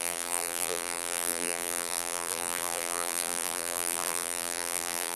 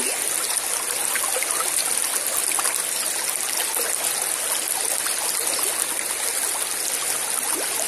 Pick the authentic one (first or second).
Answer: second